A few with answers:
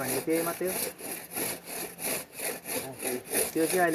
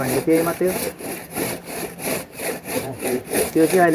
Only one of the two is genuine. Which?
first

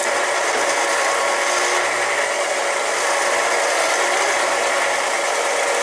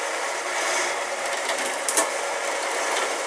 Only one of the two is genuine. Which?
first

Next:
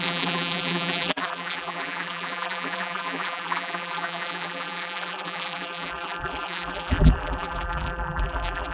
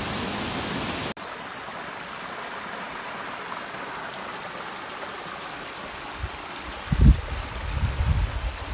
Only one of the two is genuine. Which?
second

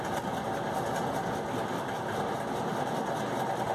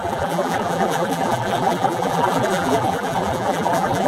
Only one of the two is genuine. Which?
first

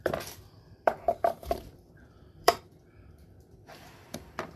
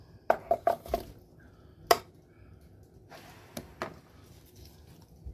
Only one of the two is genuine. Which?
second